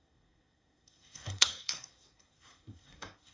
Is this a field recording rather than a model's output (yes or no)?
no